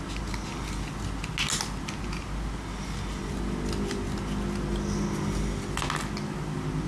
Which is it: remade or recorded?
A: recorded